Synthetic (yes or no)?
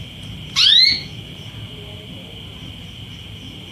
no